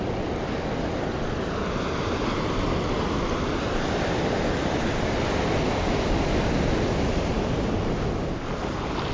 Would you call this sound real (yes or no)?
yes